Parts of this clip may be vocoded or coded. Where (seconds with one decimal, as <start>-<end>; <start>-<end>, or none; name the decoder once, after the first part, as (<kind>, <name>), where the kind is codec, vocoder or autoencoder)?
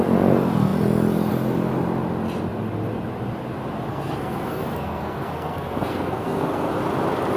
3.9-6.7 (codec, SNAC)